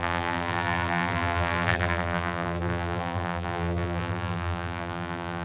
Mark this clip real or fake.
fake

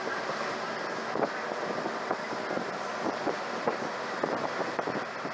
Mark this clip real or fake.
fake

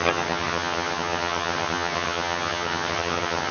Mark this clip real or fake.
fake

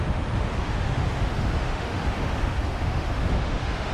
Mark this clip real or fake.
fake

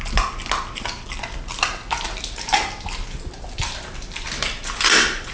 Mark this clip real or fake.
real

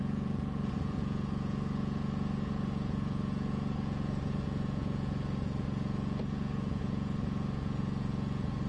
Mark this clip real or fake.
fake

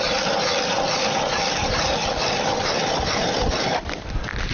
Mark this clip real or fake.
real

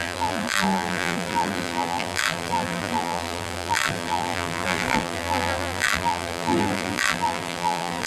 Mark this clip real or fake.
fake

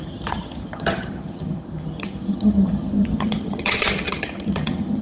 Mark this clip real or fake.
fake